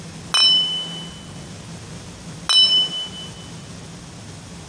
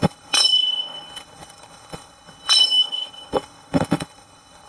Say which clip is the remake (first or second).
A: second